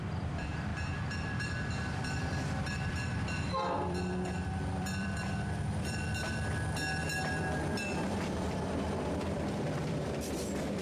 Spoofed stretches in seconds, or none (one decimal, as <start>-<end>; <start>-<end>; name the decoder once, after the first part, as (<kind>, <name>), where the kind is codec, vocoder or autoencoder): 0.0-10.8 (vocoder, BigVGAN v2)